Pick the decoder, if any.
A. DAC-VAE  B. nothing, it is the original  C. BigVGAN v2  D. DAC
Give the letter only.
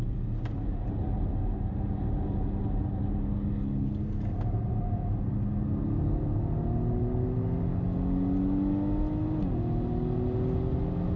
B